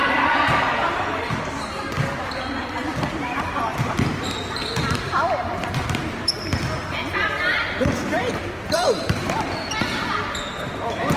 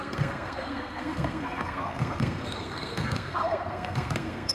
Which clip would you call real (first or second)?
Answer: first